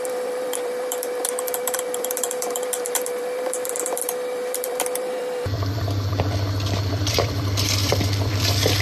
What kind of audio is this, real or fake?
fake